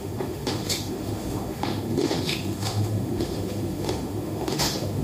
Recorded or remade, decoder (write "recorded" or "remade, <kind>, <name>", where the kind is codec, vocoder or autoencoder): remade, autoencoder, DAC-VAE